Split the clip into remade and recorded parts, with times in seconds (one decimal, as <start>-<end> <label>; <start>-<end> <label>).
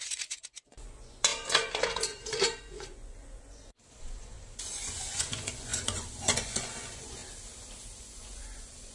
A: 0.0-7.2 remade; 7.2-8.0 recorded; 8.0-8.9 remade